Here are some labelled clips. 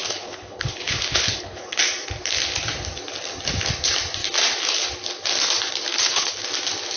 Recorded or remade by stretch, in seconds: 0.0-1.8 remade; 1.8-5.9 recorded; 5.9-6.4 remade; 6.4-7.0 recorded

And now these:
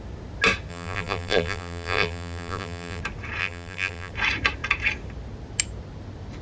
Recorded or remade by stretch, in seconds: 0.0-0.7 recorded; 0.7-3.0 remade; 3.0-3.4 recorded; 3.4-4.1 remade; 4.1-6.4 recorded

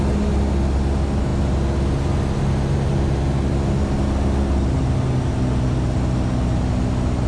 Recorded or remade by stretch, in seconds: 0.0-7.3 recorded

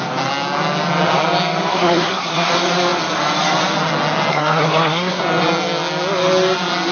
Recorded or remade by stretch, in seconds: 0.0-1.7 recorded; 1.7-2.5 remade; 2.5-4.3 recorded; 4.3-5.2 remade; 5.2-6.9 recorded

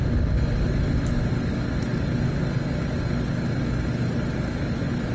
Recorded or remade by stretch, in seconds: 0.0-5.1 recorded

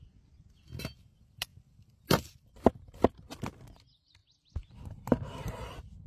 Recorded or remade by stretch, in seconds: 0.0-6.1 recorded